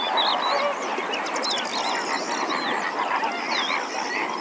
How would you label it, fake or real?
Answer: real